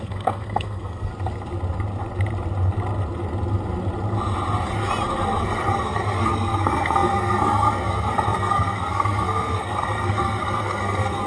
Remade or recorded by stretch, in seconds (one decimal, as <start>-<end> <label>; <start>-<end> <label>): 0.0-1.1 remade; 1.1-5.8 recorded; 5.8-11.3 remade